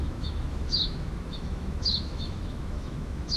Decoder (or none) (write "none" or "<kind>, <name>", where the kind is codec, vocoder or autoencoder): autoencoder, DAC-VAE